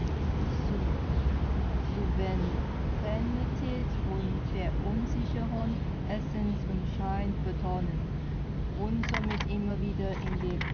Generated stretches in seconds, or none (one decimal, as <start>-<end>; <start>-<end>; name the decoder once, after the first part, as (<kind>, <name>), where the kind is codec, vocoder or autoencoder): none